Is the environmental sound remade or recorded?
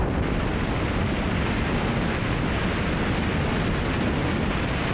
recorded